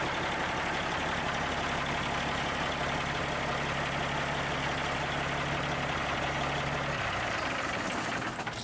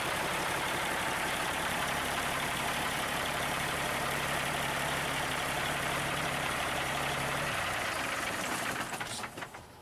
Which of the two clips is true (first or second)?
first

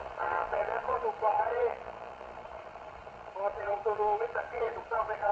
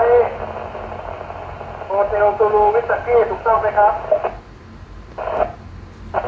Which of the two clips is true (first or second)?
second